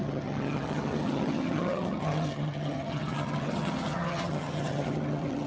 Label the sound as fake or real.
fake